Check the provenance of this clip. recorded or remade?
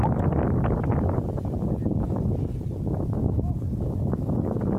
recorded